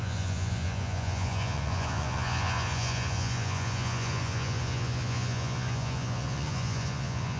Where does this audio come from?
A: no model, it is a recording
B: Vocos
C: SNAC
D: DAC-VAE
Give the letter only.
B